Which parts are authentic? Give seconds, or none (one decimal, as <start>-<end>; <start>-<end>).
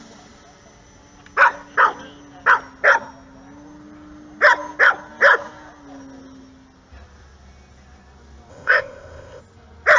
0.0-8.5; 9.4-10.0